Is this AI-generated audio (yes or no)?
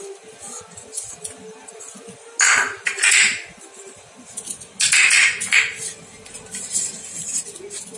no